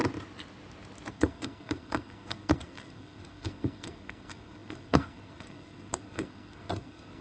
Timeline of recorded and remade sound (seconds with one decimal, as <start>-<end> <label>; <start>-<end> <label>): 0.0-1.1 recorded; 1.1-7.2 remade